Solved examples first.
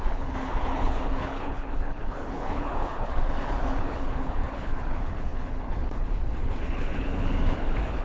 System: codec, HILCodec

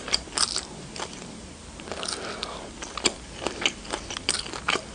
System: vocoder, BigVGAN v2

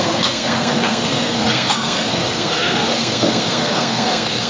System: codec, SNAC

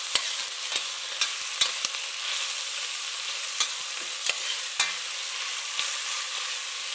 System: none